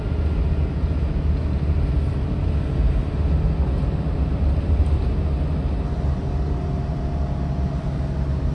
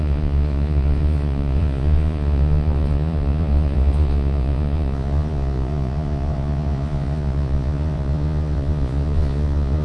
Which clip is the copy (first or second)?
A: second